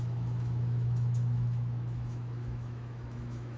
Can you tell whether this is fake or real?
fake